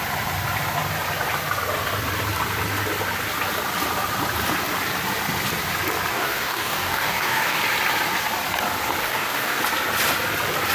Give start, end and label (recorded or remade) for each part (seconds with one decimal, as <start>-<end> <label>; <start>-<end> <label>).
0.0-6.1 recorded; 6.1-7.6 remade; 7.6-9.0 recorded; 9.0-9.6 remade; 9.6-10.7 recorded